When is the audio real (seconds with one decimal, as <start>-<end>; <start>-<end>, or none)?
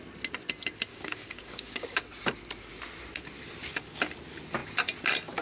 0.0-0.9; 2.0-5.4